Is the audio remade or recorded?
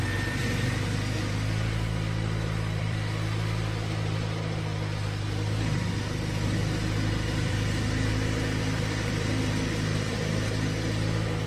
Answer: remade